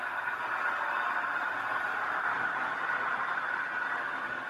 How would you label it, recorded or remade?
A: recorded